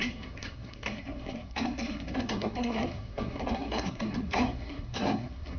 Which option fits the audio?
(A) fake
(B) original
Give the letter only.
A